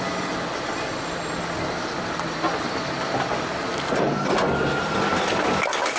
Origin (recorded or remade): recorded